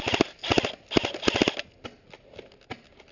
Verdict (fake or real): real